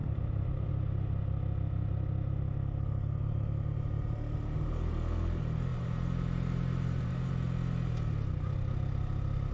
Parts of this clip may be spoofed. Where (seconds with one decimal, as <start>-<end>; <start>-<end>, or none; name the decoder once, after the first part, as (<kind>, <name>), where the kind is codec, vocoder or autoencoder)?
0.0-0.7 (vocoder, BigVGAN v2); 5.7-7.3